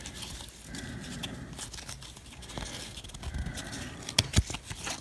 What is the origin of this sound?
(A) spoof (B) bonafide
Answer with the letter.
B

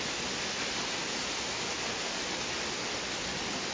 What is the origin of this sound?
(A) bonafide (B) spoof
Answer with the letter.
A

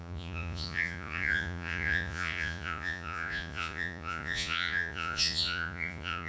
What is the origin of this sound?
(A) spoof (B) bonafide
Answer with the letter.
A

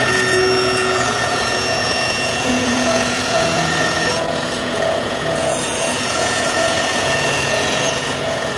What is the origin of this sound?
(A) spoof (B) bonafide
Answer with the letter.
A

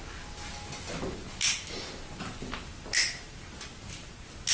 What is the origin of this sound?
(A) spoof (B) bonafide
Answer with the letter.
B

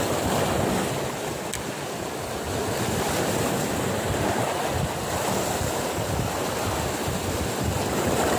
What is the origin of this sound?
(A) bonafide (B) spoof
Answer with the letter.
A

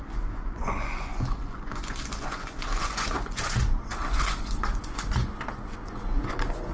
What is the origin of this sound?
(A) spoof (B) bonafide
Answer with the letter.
A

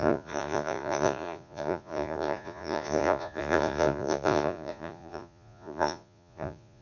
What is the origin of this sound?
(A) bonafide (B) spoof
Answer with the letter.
B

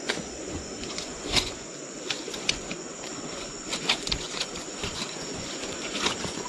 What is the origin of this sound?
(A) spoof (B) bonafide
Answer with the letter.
A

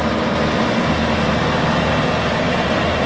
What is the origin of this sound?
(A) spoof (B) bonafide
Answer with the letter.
B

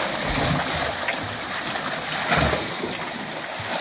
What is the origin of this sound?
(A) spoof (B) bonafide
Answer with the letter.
B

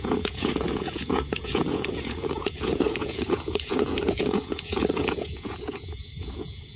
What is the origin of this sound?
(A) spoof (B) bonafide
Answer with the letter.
A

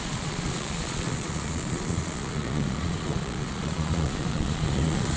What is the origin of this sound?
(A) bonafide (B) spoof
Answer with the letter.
B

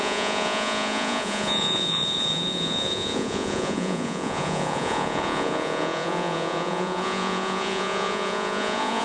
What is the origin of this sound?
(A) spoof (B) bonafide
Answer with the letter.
A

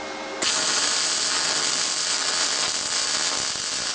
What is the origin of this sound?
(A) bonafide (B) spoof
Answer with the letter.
A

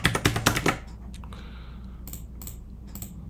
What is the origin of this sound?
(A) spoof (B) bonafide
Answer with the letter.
B